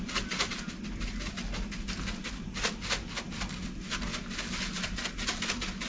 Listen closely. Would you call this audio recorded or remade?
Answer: recorded